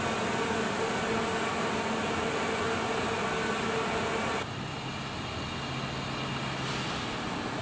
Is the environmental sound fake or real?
real